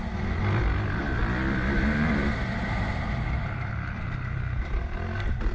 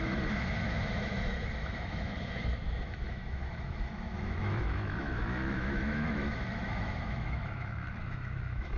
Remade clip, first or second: second